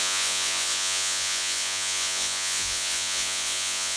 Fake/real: fake